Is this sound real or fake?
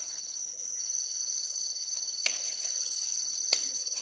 fake